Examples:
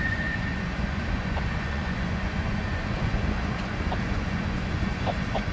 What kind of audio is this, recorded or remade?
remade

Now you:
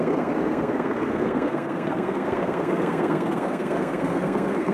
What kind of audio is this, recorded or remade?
remade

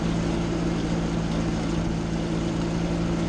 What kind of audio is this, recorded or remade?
recorded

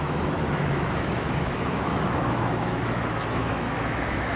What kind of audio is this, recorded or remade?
remade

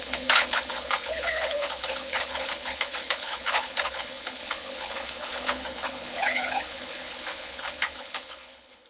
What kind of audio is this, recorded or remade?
remade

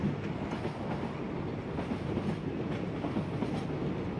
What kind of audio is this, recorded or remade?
recorded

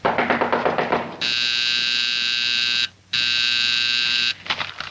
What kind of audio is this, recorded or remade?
recorded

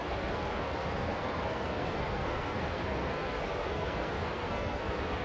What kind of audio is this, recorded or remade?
remade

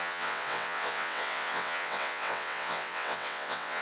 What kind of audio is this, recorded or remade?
remade